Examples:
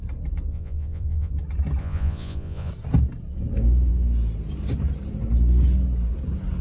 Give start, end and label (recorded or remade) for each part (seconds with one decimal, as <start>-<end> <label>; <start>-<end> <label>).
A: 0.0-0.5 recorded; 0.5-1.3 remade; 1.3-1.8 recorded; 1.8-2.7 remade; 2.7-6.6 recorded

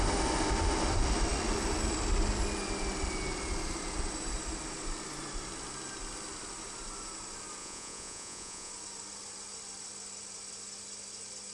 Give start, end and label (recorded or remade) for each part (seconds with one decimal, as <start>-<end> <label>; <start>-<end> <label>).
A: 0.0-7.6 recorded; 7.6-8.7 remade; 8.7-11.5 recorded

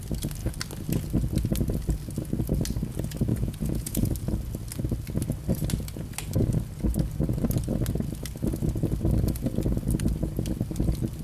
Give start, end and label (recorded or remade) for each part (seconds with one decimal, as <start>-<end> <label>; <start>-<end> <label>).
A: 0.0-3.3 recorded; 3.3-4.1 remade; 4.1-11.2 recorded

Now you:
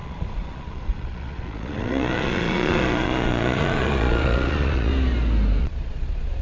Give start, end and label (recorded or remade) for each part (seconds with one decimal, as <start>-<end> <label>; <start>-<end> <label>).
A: 0.0-4.9 remade; 4.9-5.6 recorded; 5.6-6.4 remade

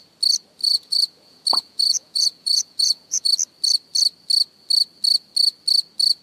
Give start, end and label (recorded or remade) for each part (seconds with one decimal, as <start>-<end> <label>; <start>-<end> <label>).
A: 0.0-0.6 recorded; 0.6-3.3 remade; 3.3-6.2 recorded

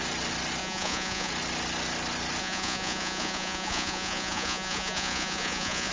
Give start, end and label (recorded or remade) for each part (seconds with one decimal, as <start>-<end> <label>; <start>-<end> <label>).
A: 0.0-0.6 recorded; 0.6-1.3 remade; 1.3-2.4 recorded; 2.4-5.9 remade